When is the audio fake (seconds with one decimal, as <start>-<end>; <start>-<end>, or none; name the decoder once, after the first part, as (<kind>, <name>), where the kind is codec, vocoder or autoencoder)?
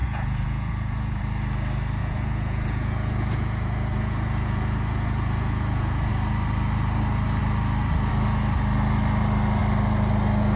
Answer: 0.0-1.2 (vocoder, Vocos); 2.0-6.1